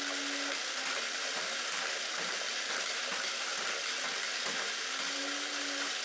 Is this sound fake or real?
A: real